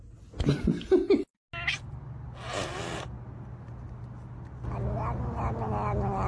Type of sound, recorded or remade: recorded